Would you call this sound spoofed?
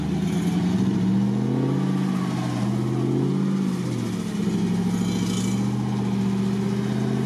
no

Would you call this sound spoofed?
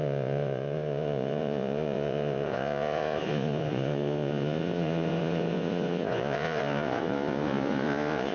yes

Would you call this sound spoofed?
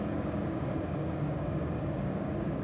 yes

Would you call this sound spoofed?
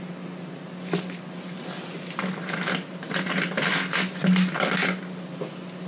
no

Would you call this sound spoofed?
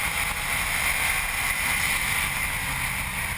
no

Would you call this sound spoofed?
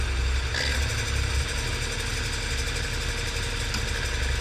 no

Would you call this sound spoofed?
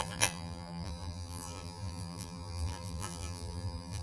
yes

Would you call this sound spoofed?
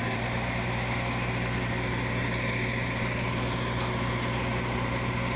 no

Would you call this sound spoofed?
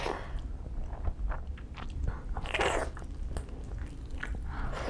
no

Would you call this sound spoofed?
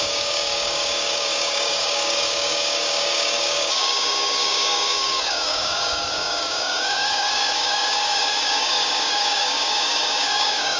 yes